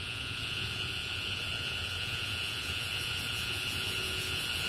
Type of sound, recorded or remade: remade